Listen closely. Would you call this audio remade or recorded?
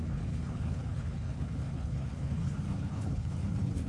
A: remade